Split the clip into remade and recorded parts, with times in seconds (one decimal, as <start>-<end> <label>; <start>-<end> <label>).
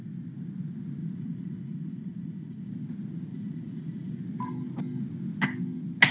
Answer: 0.0-1.0 recorded; 1.0-2.7 remade; 2.7-3.3 recorded; 3.3-4.2 remade; 4.2-6.1 recorded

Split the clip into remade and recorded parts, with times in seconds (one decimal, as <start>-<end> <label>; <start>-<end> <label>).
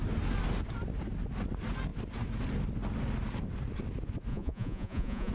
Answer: 0.0-4.3 recorded; 4.3-5.3 remade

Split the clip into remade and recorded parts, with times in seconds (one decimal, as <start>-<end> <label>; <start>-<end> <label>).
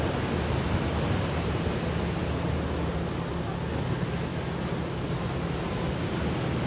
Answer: 0.0-6.7 recorded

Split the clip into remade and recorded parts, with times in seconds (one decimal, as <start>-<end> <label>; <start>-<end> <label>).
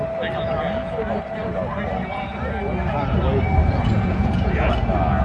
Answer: 0.0-3.6 recorded; 3.6-4.7 remade; 4.7-5.2 recorded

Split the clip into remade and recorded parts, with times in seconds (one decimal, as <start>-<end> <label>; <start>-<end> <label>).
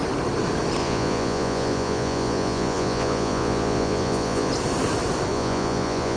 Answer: 0.0-0.8 recorded; 0.8-4.5 remade; 4.5-5.3 recorded; 5.3-6.2 remade